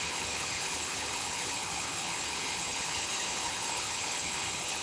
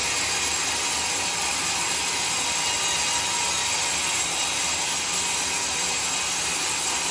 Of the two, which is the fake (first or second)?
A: first